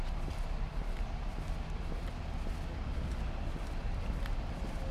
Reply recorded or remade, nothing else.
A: recorded